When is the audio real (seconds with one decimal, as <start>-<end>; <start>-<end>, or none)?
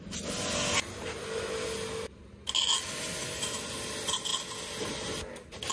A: 0.0-5.7